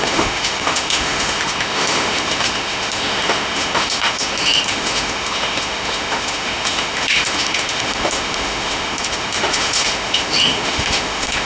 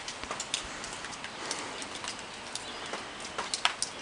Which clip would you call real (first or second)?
second